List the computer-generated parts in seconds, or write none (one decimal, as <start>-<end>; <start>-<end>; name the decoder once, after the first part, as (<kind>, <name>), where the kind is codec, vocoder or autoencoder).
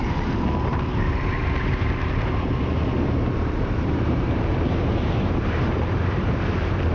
0.6-6.9 (vocoder, BigVGAN v2)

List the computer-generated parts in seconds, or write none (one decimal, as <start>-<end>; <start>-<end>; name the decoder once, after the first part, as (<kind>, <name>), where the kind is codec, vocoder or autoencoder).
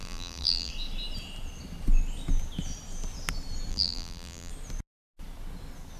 0.0-0.7 (vocoder, BigVGAN v2); 3.7-4.5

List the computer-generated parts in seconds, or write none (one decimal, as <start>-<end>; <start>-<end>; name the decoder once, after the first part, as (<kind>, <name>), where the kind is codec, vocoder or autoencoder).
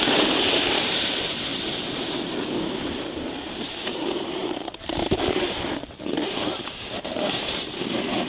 0.0-1.5 (vocoder, BigVGAN v2); 2.6-8.3